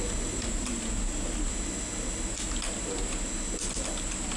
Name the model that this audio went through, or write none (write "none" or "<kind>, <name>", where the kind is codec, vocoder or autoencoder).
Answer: none